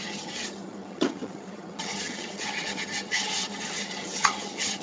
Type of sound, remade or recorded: remade